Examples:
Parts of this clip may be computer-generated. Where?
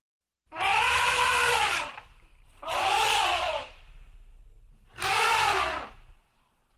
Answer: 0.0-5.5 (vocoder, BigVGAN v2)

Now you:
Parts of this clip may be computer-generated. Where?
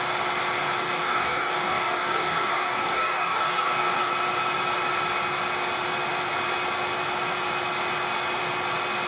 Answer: 0.8-4.1 (codec, DAC)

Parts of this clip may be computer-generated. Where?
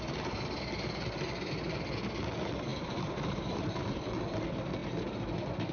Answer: 2.7-4.0 (vocoder, BigVGAN v2)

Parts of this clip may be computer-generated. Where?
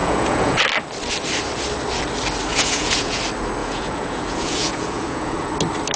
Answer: 0.0-0.6 (vocoder, Vocos); 2.5-3.2; 3.6-5.5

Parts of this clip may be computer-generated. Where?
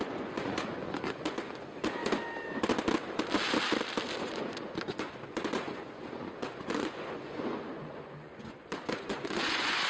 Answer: 0.0-2.0 (vocoder, Vocos); 4.2-9.9